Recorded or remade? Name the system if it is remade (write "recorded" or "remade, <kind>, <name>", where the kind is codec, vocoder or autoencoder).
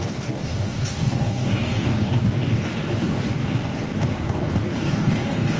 remade, codec, DAC